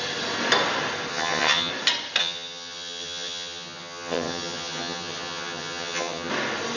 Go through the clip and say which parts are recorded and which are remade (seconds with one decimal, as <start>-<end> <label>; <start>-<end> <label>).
0.0-1.1 recorded; 1.1-1.7 remade; 1.7-2.2 recorded; 2.2-6.3 remade; 6.3-6.8 recorded